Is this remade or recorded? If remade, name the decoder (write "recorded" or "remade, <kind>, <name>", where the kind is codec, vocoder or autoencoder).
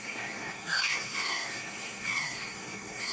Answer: remade, codec, SNAC